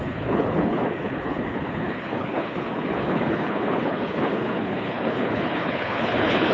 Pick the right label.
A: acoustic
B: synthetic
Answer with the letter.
B